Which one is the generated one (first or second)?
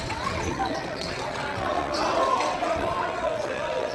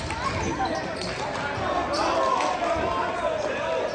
first